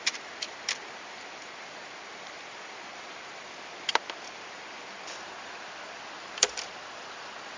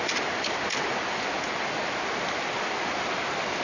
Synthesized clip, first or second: first